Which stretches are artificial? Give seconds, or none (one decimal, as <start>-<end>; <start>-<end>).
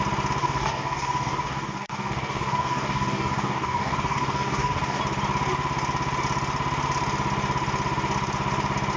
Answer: 0.4-5.0